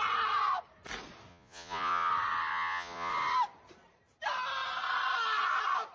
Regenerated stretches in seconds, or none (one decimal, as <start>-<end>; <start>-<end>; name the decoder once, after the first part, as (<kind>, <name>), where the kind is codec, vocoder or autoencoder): 1.3-2.1 (vocoder, Vocos); 2.5-3.1